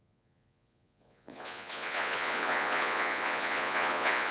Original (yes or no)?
no